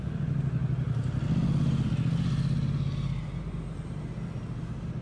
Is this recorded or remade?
recorded